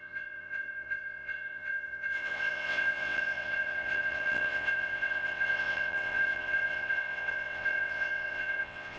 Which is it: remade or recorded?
remade